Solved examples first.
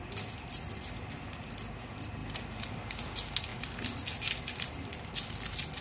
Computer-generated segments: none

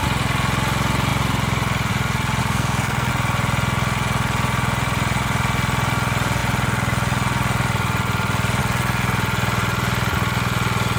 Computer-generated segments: 2.4-3.1 (codec, SNAC)

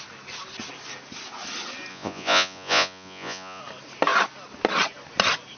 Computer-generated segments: 1.9-3.6 (vocoder, Vocos)

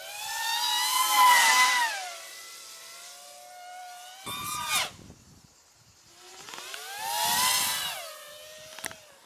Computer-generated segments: none

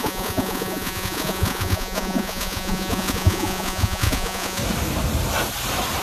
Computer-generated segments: 0.0-4.6 (vocoder, Vocos)

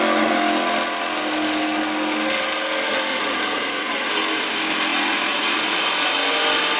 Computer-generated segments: 3.1-4.1 (vocoder, Vocos); 4.9-5.9

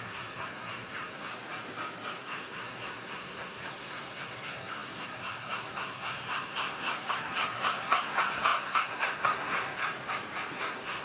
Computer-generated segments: 0.0-1.3 (codec, SNAC); 2.2-9.8; 10.5-11.0

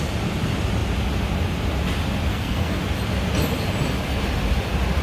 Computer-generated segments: 2.3-2.8 (codec, SNAC)